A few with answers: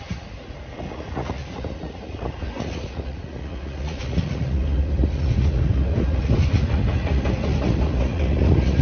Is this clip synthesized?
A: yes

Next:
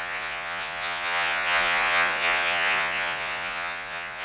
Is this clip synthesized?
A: yes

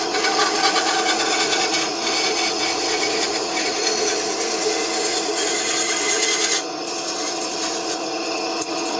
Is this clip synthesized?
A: yes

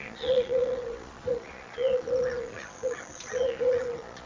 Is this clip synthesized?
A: yes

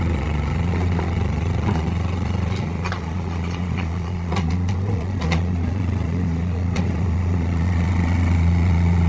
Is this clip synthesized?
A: yes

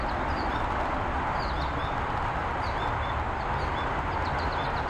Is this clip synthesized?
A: no